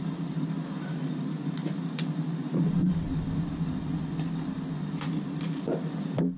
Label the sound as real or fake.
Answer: real